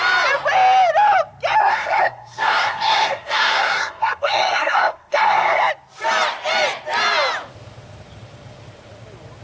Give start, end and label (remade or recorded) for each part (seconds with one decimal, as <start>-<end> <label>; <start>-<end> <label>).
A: 0.0-1.6 recorded; 1.6-5.6 remade; 5.6-9.4 recorded